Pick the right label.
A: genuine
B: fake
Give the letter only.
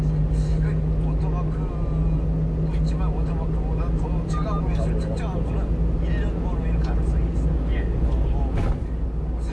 A